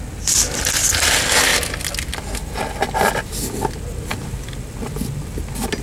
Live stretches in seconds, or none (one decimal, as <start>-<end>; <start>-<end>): 0.0-5.8